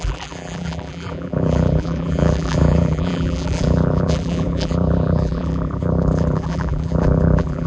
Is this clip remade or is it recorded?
remade